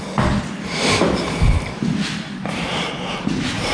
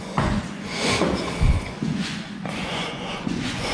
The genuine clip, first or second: first